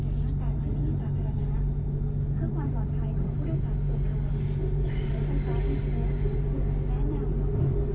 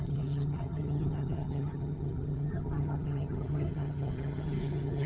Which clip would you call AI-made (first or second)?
second